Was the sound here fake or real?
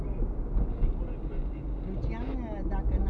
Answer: real